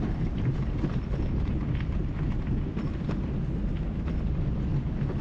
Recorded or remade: recorded